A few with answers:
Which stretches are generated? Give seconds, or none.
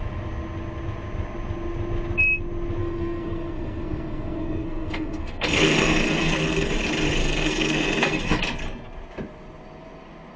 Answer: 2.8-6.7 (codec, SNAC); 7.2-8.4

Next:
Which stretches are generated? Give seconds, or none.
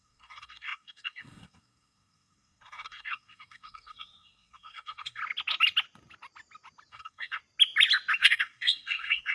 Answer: 0.0-5.2 (codec, SNAC); 6.9-7.4; 8.2-9.3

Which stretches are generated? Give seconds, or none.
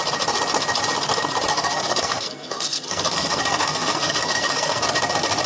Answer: 1.5-4.8 (codec, SNAC)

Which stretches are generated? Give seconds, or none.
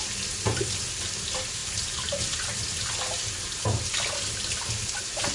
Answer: none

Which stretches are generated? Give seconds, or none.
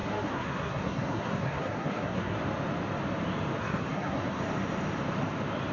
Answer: 0.0-2.4 (codec, SNAC); 3.6-4.4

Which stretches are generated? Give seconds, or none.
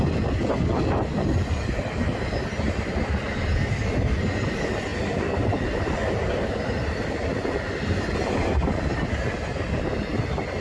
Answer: none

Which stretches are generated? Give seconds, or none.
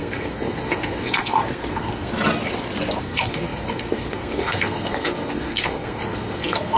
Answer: 0.0-2.1 (codec, SNAC); 3.0-6.8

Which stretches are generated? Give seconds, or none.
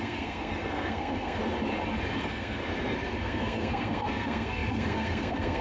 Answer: 0.0-1.4 (codec, SNAC); 2.2-2.6; 3.2-5.6